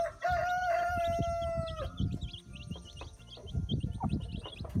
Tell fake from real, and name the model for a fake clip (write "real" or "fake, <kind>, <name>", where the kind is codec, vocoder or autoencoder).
real